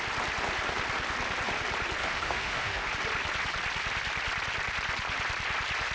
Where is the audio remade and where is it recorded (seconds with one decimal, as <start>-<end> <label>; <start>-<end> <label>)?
0.0-2.0 recorded; 2.0-2.9 remade; 2.9-5.9 recorded